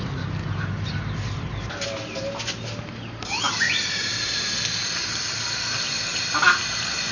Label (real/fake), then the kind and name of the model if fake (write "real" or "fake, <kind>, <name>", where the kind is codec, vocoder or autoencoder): real